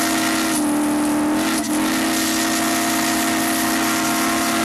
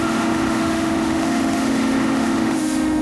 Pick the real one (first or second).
first